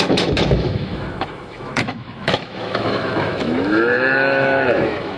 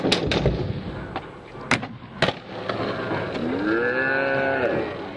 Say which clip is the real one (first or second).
second